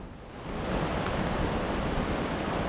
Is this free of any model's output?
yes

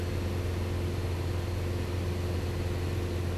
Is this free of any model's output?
yes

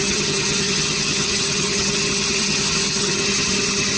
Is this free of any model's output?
no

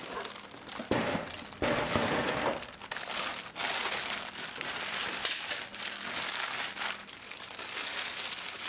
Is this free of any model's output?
yes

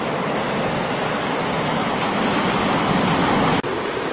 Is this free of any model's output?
yes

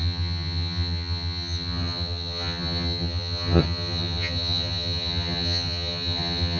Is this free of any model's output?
no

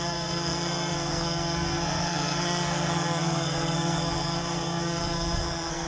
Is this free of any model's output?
no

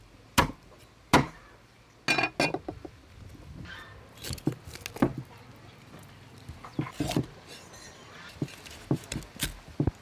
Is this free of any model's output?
yes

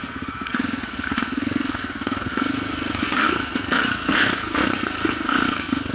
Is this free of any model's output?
no